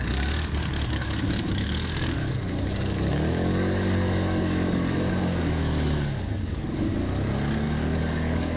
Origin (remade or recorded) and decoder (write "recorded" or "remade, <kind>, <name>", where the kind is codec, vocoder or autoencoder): remade, codec, DAC